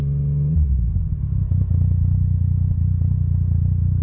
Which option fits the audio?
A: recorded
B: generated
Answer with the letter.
A